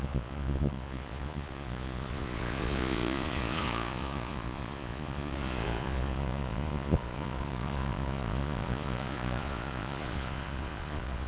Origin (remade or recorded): remade